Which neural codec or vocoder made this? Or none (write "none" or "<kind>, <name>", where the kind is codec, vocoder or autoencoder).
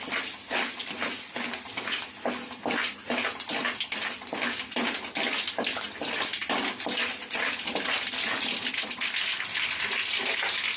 none